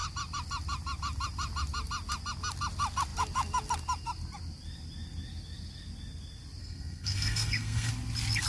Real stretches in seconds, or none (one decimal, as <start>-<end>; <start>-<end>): 0.0-6.6; 7.9-8.5

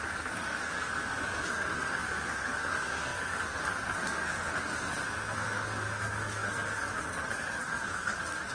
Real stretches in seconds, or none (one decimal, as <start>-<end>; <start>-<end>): none

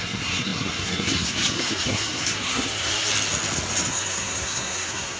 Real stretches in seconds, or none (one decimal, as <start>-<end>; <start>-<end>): 3.1-3.9

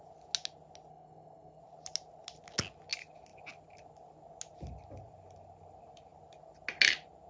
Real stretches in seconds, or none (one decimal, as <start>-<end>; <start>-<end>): 0.0-0.9; 1.6-7.3

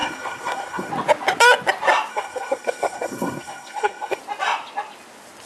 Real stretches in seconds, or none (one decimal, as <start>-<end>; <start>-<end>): 0.9-2.1; 4.2-5.5